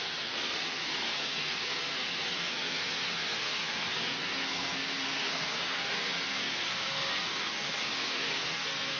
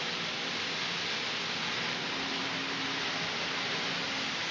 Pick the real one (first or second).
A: second